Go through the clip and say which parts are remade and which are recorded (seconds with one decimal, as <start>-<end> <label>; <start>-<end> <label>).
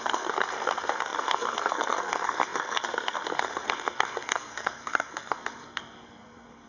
0.0-6.7 remade